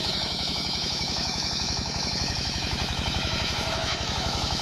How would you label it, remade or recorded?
remade